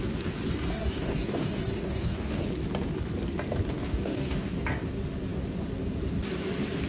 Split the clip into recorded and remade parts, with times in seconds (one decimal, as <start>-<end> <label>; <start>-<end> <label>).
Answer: 0.0-0.7 recorded; 0.7-2.5 remade; 2.5-3.8 recorded; 3.8-4.5 remade; 4.5-6.9 recorded